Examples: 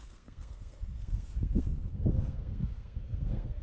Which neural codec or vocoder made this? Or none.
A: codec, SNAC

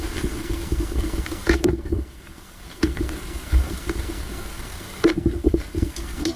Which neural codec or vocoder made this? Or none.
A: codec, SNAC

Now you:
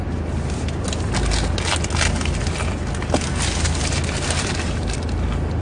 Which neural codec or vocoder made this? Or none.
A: none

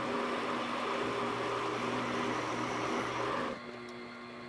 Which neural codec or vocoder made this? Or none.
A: none